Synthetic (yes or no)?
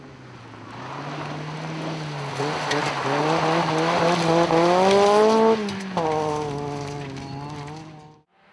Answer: no